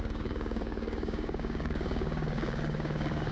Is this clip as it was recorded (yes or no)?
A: no